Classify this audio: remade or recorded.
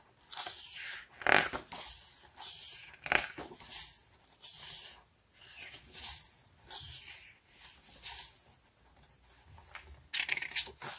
recorded